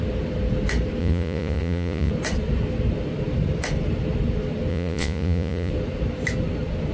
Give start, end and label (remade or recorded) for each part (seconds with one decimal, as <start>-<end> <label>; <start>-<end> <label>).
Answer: 0.0-1.0 recorded; 1.0-2.1 remade; 2.1-4.7 recorded; 4.7-5.7 remade; 5.7-6.9 recorded